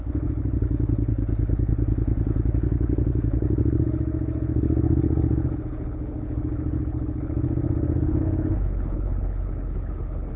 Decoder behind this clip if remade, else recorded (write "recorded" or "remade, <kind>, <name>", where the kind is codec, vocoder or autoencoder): remade, codec, HILCodec